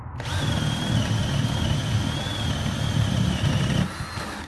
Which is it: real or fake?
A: real